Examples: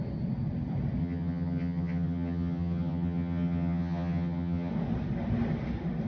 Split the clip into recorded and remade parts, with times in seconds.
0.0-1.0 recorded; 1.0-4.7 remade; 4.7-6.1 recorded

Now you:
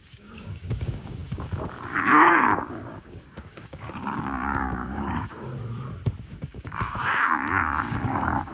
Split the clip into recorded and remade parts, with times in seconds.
0.0-5.5 remade; 5.5-6.2 recorded; 6.2-8.5 remade

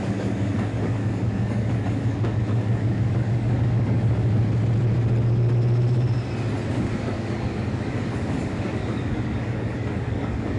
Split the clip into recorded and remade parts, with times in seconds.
0.0-4.4 remade; 4.4-6.7 recorded; 6.7-10.6 remade

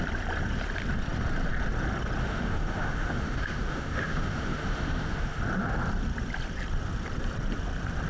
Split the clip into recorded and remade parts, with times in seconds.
0.0-2.2 recorded; 2.2-5.4 remade; 5.4-8.1 recorded

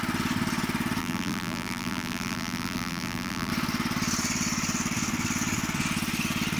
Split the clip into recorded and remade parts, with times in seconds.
0.0-1.0 recorded; 1.0-3.5 remade; 3.5-6.6 recorded

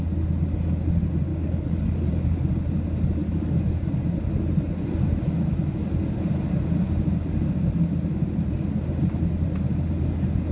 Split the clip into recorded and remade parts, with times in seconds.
0.0-1.3 recorded; 1.3-2.1 remade; 2.1-3.2 recorded; 3.2-3.9 remade; 3.9-10.5 recorded

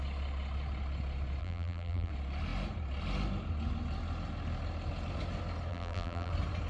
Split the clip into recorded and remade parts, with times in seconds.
0.0-1.4 recorded; 1.4-2.1 remade; 2.1-5.7 recorded; 5.7-6.3 remade; 6.3-6.7 recorded

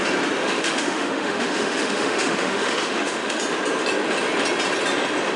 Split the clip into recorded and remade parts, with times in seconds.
0.0-0.4 recorded; 0.4-3.4 remade; 3.4-5.4 recorded